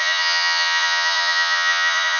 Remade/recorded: remade